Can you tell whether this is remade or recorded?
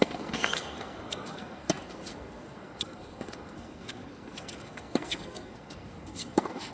remade